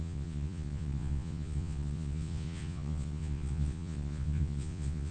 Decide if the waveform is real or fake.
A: fake